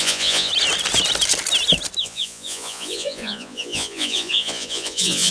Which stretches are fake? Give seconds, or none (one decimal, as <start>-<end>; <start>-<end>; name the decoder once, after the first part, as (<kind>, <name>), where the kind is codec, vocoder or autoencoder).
0.0-0.5 (vocoder, Vocos); 2.0-5.3